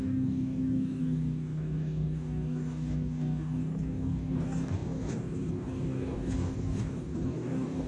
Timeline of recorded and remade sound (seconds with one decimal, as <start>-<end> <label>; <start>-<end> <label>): 0.0-7.9 remade